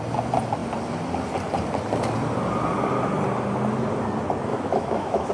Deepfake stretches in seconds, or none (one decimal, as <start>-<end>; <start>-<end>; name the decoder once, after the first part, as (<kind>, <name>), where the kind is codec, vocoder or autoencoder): 4.5-5.3 (autoencoder, DAC-VAE)